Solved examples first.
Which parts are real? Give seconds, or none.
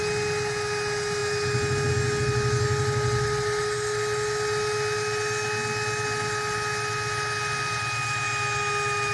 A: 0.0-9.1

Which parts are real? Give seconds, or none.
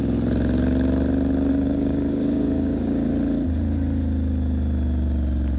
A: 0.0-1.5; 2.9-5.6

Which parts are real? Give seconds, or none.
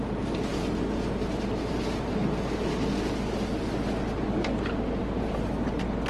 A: 0.0-6.1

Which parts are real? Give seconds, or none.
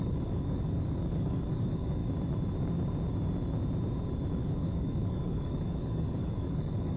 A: 2.0-4.4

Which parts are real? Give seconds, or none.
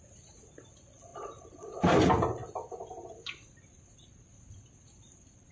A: 0.0-5.5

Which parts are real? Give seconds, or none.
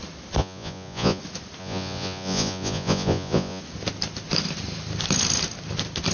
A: 0.0-0.4; 1.2-1.6; 3.6-6.1